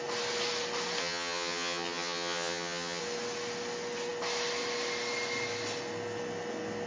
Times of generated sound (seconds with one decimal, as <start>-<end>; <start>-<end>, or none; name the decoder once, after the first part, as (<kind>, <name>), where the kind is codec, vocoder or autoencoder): 1.0-3.0 (vocoder, HiFi-GAN)